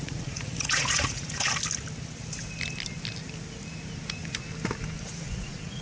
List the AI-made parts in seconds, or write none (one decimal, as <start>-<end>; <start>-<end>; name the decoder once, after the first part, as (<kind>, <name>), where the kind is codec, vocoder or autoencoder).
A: 0.0-1.5 (vocoder, Vocos); 5.0-5.8